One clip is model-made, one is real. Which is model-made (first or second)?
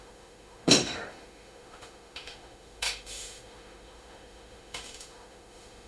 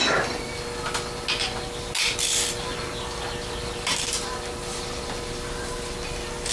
first